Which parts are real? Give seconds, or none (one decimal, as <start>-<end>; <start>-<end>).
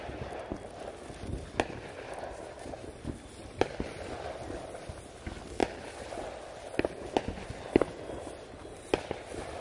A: 0.0-9.6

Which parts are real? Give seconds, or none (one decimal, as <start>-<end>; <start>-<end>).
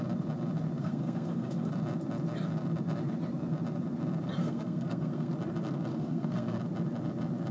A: 0.0-0.8; 1.7-4.4; 5.3-5.9; 6.6-7.5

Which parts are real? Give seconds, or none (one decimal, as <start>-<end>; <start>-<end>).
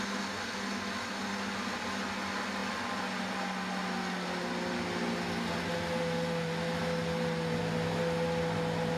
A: 0.0-9.0